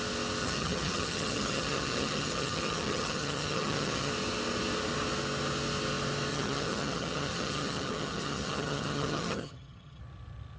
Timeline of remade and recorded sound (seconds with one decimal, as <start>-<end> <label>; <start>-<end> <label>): 0.0-0.4 recorded; 0.4-4.1 remade; 4.1-6.3 recorded; 6.3-10.0 remade; 10.0-10.6 recorded